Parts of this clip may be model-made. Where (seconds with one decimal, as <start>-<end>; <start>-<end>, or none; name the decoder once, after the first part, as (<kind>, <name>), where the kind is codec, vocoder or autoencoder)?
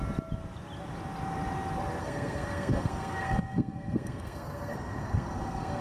2.0-5.8 (codec, SNAC)